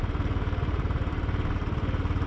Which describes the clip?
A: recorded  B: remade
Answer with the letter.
B